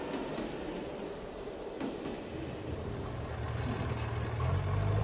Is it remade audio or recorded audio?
recorded